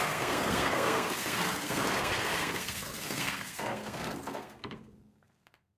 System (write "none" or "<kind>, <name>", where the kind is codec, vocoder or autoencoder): codec, SNAC